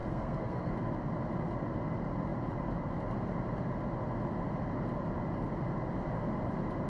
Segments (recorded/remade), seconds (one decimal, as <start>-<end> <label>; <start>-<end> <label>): 0.0-0.7 remade; 0.7-6.9 recorded